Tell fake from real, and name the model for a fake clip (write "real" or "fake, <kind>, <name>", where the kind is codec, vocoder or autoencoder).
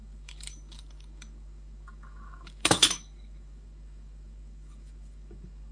fake, codec, DAC